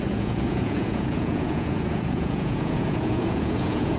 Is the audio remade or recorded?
remade